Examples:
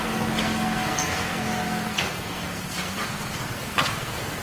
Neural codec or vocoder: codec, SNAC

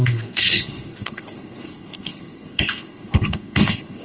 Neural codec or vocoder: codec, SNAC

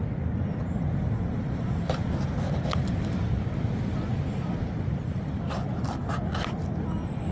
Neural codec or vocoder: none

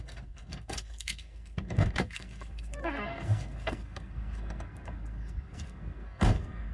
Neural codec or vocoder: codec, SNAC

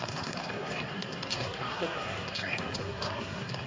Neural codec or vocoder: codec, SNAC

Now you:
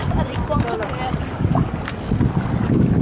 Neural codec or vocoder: none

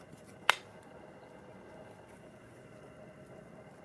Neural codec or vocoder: none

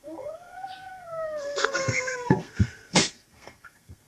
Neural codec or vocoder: codec, SNAC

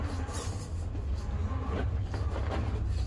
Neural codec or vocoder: none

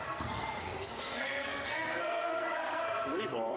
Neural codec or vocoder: codec, SNAC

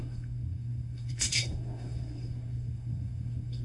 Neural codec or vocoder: codec, SNAC